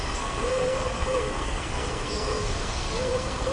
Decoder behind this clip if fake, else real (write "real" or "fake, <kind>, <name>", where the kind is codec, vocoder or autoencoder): fake, codec, SNAC